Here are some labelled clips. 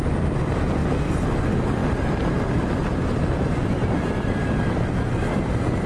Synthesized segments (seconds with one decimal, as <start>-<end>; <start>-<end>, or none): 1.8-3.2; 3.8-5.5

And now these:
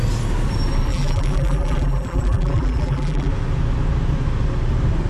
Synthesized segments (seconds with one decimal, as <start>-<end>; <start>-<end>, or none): 0.9-3.3

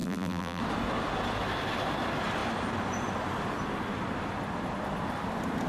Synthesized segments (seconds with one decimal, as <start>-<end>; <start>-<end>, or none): 0.0-0.6

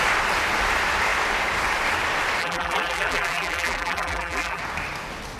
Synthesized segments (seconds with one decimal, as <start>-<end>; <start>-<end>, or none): 2.4-4.6